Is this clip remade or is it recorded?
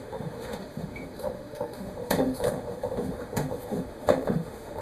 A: remade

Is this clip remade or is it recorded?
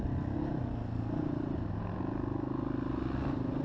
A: recorded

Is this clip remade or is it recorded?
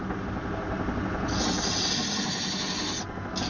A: recorded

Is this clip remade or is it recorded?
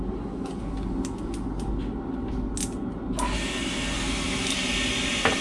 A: recorded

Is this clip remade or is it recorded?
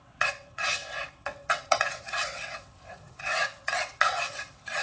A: remade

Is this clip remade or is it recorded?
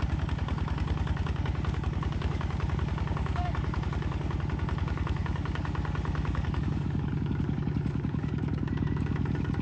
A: remade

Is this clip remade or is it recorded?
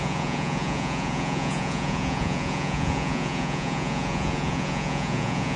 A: remade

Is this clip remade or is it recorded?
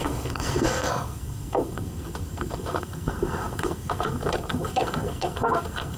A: remade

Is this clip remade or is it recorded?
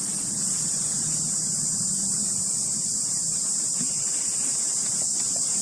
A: remade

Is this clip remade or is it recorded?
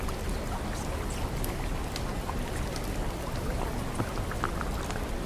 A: recorded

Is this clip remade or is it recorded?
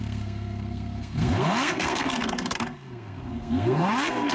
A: remade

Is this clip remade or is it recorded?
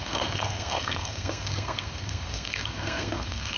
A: remade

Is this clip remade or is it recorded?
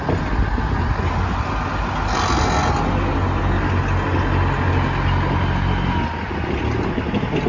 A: recorded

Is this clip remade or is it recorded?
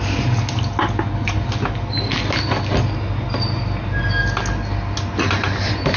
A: recorded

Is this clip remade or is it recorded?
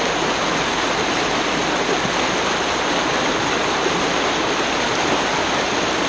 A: recorded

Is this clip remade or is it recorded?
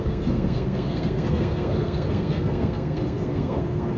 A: remade